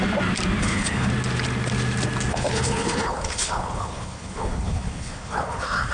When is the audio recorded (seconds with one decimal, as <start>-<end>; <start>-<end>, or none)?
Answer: 0.0-0.6; 1.1-2.3